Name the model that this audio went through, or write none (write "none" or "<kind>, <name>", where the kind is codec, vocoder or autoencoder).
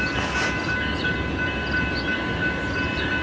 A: none